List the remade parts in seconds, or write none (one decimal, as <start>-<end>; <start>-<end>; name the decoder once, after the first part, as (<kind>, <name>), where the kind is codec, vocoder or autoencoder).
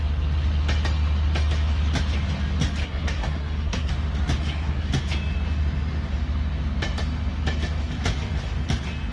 2.8-3.9 (codec, SNAC); 4.4-4.9